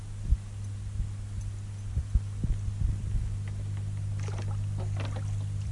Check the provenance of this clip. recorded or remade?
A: recorded